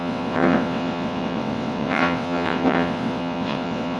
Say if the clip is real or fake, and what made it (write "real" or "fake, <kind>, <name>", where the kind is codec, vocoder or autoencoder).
fake, vocoder, WaveNeXt